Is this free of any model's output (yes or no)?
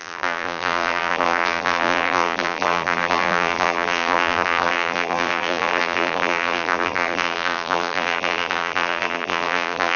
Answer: no